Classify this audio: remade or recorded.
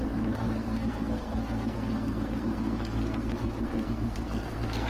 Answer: remade